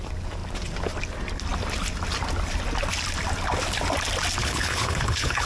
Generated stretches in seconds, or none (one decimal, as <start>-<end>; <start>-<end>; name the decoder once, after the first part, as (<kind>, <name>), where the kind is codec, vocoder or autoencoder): 4.4-5.5 (codec, HILCodec)

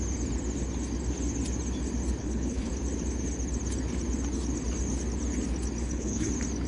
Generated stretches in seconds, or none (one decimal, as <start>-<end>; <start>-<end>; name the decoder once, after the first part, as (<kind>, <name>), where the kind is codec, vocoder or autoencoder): 2.2-2.7 (codec, HILCodec); 5.8-6.3

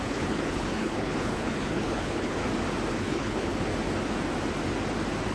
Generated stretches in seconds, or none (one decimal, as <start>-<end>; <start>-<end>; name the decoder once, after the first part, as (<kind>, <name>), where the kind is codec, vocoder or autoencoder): 0.0-2.4 (codec, HILCodec); 2.9-3.7